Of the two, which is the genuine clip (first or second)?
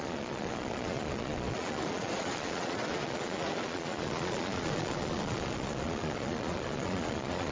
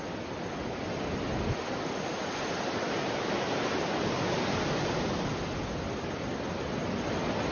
second